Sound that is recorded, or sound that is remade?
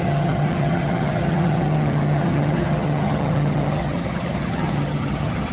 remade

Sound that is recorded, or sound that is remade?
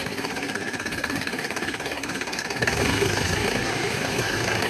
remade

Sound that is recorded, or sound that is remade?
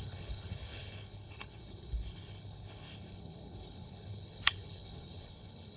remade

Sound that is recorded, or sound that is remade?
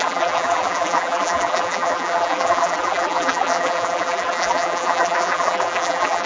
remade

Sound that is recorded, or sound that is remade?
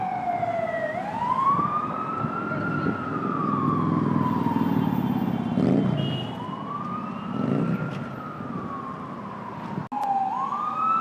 recorded